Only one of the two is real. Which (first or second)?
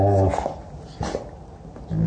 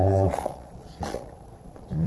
first